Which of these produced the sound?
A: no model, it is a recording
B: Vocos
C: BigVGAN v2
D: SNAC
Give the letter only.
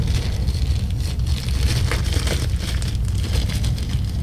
A